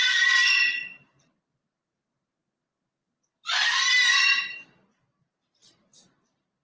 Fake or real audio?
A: fake